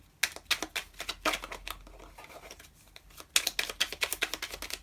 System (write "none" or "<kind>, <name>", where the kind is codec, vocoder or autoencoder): none